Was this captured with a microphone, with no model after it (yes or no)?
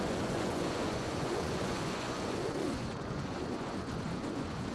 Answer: no